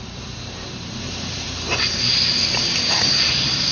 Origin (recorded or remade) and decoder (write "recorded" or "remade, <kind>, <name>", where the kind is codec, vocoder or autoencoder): remade, vocoder, BigVGAN v2